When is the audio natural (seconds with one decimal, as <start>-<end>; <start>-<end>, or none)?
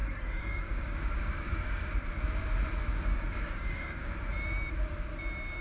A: 1.9-2.8; 4.2-5.6